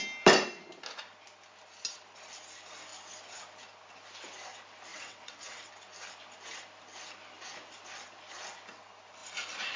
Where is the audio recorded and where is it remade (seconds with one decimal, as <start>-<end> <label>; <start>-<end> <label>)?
0.0-4.9 recorded; 4.9-5.7 remade; 5.7-9.8 recorded

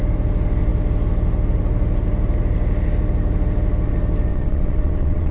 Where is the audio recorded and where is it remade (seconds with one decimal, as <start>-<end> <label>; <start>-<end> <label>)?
0.0-4.3 recorded; 4.3-5.3 remade

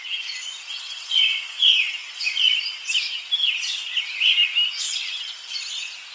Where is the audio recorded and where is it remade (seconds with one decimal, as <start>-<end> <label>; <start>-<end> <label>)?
0.0-0.7 recorded; 0.7-1.6 remade; 1.6-6.1 recorded

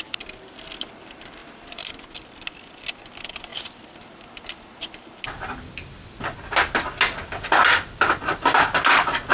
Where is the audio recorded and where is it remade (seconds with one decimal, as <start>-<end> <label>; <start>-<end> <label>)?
0.0-9.3 recorded

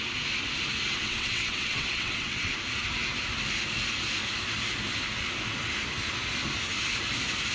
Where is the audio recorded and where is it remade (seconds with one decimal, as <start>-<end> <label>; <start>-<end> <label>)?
0.0-1.0 recorded; 1.0-2.5 remade; 2.5-7.5 recorded

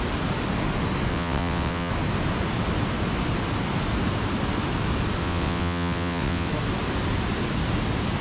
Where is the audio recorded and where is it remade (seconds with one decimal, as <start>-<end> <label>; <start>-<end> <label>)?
0.0-1.1 recorded; 1.1-1.9 remade; 1.9-5.2 recorded; 5.2-6.5 remade; 6.5-8.2 recorded